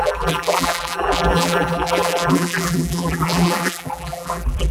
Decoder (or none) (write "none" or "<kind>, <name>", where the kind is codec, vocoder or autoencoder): vocoder, BigVGAN v2